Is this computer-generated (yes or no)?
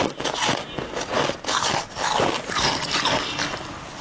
no